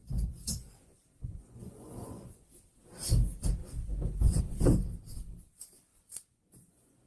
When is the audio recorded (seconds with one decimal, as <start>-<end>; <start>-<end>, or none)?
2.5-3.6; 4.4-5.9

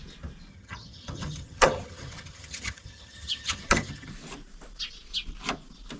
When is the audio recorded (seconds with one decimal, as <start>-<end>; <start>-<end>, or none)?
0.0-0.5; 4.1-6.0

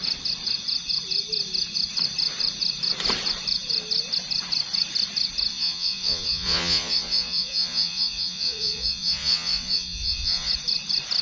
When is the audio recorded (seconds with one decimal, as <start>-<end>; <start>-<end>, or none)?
0.0-5.5; 10.5-11.2

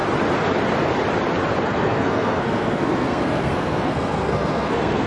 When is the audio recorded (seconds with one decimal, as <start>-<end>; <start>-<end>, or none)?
0.0-1.6

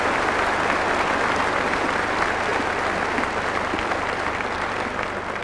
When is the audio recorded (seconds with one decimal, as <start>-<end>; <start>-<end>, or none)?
0.0-5.4